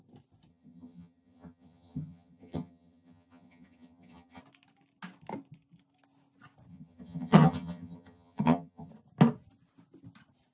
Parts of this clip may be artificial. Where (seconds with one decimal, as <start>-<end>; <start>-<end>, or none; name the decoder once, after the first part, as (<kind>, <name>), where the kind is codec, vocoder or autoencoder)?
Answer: 0.5-4.4 (vocoder, HiFi-GAN); 6.7-8.9